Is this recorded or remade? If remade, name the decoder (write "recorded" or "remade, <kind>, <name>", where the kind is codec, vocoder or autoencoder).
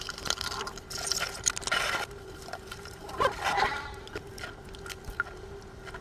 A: recorded